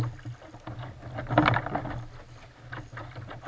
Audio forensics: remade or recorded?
recorded